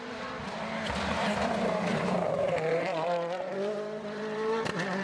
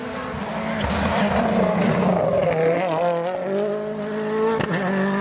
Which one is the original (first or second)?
second